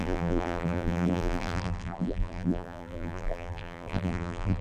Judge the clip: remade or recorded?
remade